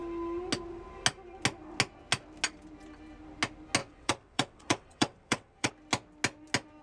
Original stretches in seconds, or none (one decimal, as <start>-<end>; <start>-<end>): 0.0-3.8; 5.7-6.8